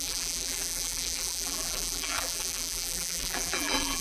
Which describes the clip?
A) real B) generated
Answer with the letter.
B